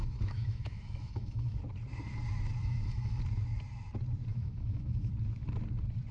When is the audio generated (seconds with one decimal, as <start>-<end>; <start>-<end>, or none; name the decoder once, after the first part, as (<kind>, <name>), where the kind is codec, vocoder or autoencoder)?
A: 0.0-1.6 (autoencoder, DAC-VAE); 2.6-3.2; 4.3-5.1